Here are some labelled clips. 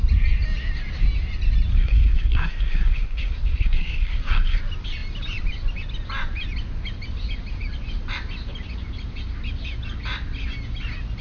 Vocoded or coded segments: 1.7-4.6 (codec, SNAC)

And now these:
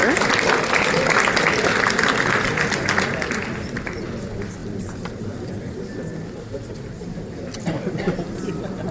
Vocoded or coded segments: none

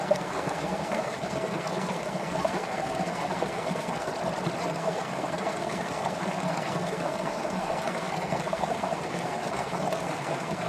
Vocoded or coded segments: 0.0-4.1 (codec, SNAC); 4.6-10.7

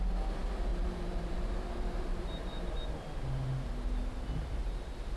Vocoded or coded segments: 0.7-1.5 (vocoder, BigVGAN v2); 2.1-2.7

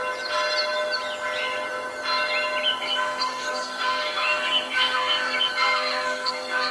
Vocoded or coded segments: 2.8-6.7 (codec, SNAC)

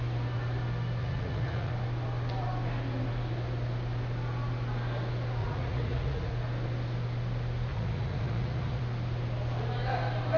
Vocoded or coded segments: 1.0-1.7 (vocoder, Vocos); 5.4-6.3; 7.7-8.8

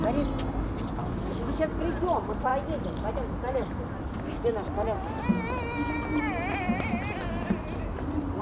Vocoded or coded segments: 1.0-1.7 (autoencoder, DAC-VAE)

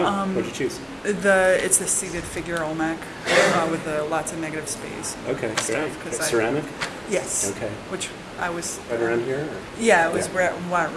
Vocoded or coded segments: 5.7-6.5 (vocoder, Vocos); 9.4-10.4